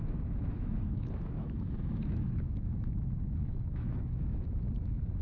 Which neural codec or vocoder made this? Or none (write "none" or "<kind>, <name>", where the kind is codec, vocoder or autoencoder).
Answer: autoencoder, DAC-VAE